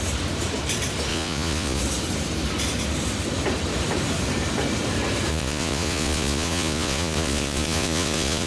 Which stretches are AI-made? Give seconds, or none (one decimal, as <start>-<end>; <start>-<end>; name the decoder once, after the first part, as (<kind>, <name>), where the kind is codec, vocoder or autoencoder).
1.1-1.8 (vocoder, Vocos); 5.3-8.5

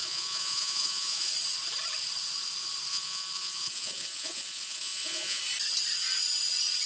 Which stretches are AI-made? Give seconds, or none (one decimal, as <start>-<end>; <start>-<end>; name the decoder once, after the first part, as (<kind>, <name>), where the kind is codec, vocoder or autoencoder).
0.0-1.3 (vocoder, Vocos); 2.9-5.4

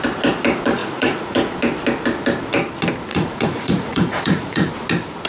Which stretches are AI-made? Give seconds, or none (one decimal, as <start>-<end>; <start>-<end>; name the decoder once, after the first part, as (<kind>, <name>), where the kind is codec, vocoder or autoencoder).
0.8-1.5 (vocoder, Vocos); 3.1-4.7

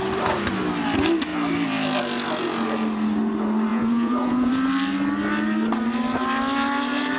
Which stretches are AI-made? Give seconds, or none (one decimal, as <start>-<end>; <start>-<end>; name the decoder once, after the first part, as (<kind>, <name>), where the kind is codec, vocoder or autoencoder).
3.7-4.5 (vocoder, Vocos)

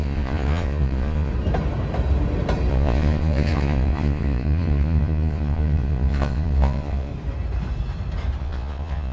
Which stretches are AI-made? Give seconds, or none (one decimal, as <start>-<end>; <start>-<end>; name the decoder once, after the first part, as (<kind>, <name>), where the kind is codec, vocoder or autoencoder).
0.0-1.3 (vocoder, Vocos); 2.7-7.1; 8.4-9.1

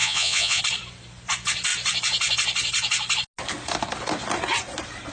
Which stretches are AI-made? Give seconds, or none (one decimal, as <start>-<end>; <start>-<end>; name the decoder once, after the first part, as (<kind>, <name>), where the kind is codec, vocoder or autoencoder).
0.0-0.6 (vocoder, Vocos)